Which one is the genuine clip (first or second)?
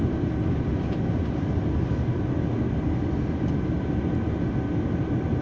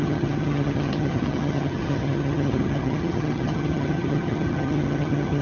first